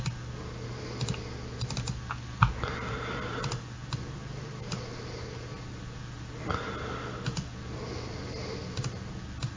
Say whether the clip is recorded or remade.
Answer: recorded